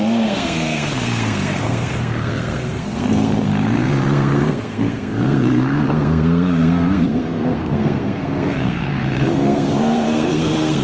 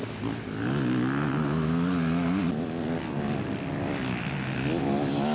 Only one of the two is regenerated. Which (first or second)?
first